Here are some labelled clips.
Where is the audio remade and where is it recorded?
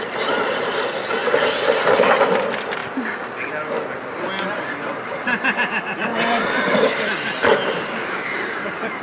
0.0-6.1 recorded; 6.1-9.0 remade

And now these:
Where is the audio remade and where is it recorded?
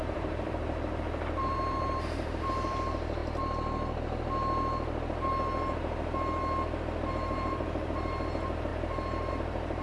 0.0-3.2 remade; 3.2-7.1 recorded; 7.1-9.8 remade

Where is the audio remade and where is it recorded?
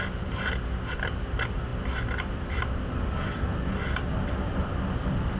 0.0-5.4 recorded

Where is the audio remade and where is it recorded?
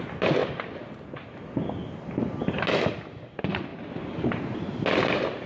0.0-3.7 recorded; 3.7-4.3 remade; 4.3-5.5 recorded